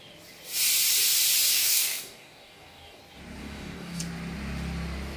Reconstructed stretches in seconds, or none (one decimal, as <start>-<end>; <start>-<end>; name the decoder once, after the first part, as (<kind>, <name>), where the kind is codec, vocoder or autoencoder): 1.5-3.0 (codec, DAC); 3.4-4.0